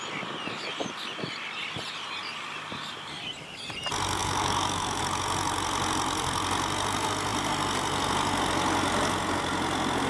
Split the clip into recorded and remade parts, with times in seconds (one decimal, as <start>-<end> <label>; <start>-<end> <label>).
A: 0.0-4.2 recorded; 4.2-5.0 remade; 5.0-10.1 recorded